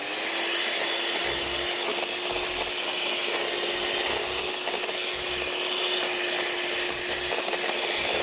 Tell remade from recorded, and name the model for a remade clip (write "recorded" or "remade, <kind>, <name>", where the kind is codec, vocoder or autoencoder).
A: recorded